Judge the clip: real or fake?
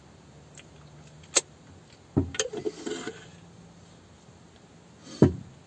real